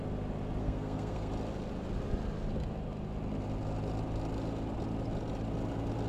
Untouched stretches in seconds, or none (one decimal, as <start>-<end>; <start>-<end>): 0.0-0.6; 1.3-6.1